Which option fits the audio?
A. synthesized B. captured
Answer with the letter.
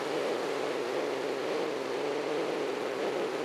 B